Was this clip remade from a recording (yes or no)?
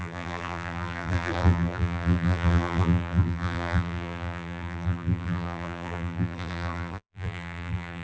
yes